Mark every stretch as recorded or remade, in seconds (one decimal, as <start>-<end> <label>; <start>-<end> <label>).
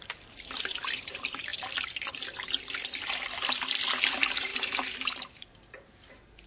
0.0-1.5 remade; 1.5-4.1 recorded; 4.1-6.5 remade